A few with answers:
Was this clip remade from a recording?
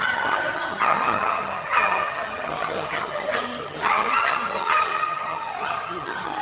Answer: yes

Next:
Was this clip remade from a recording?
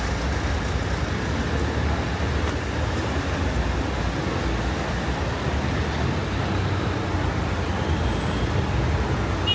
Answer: no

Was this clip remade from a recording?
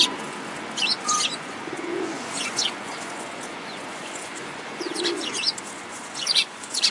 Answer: yes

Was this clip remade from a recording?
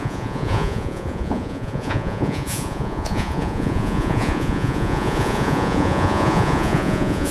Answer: yes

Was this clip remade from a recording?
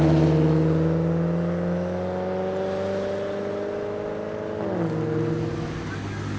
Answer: no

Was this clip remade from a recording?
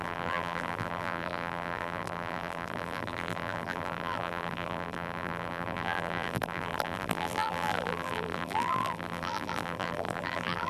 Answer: yes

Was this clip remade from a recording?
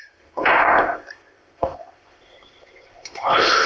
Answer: yes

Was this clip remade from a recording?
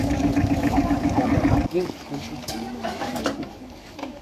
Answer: yes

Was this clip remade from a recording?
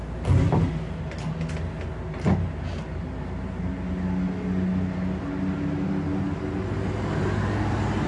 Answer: no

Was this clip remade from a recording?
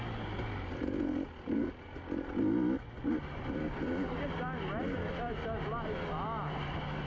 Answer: no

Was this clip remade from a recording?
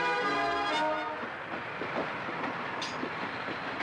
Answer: no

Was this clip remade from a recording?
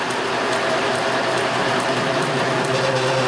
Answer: no